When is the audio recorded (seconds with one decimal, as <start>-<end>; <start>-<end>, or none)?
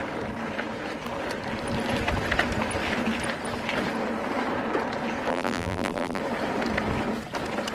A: 0.0-5.3; 6.2-7.7